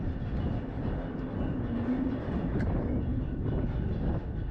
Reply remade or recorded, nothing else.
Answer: recorded